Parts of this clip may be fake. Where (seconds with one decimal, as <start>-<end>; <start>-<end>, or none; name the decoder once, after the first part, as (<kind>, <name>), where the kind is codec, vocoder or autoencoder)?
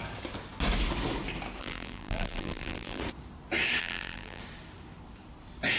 1.6-3.0 (vocoder, BigVGAN v2); 3.8-4.4